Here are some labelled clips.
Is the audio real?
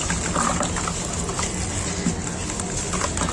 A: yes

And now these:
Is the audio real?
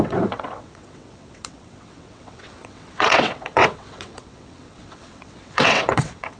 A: no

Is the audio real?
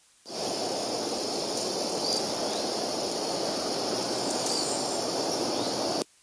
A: yes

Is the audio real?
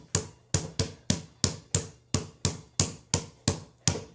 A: yes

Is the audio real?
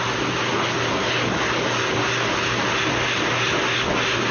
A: yes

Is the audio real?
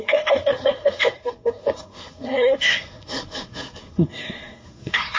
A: no